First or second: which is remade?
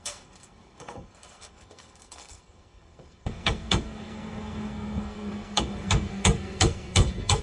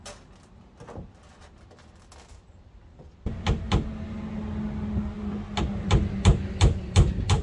first